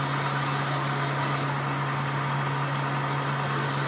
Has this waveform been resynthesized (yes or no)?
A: no